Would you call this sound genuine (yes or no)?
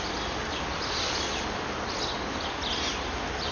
yes